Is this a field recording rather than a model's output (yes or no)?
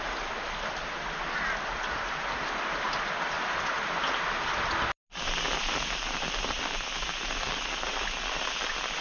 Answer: yes